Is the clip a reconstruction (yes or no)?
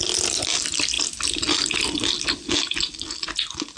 no